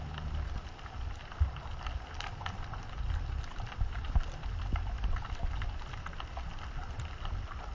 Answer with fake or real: real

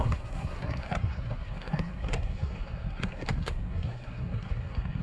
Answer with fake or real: fake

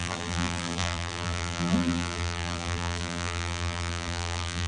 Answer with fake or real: fake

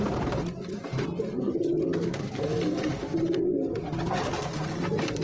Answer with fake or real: real